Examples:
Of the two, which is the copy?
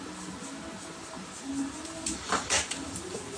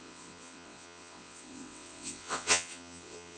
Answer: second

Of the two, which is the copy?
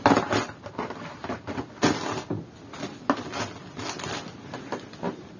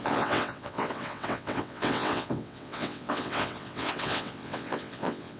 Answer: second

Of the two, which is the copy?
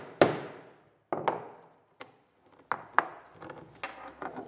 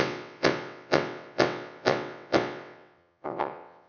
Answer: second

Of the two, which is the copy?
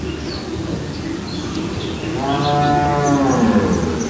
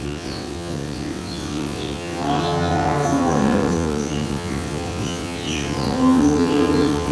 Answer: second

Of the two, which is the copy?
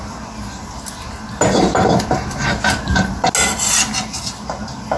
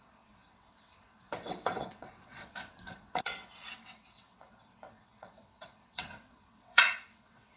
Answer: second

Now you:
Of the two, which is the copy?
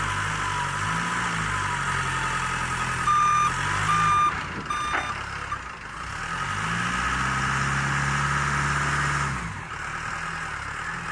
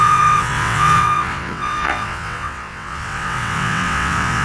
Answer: second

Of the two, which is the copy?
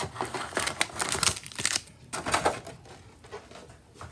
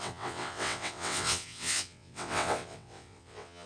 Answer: second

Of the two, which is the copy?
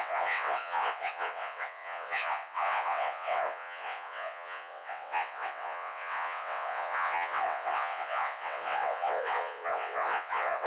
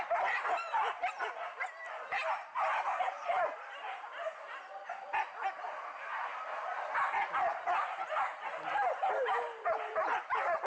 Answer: first